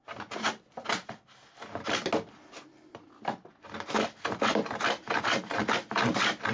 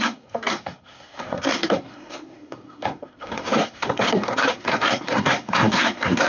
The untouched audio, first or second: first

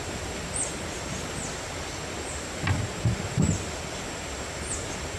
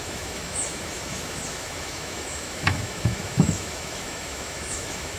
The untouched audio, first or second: first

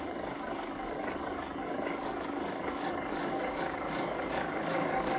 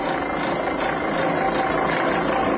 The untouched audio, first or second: second